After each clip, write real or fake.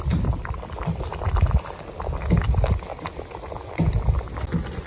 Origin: real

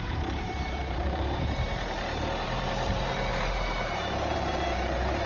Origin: fake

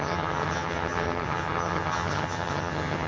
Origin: fake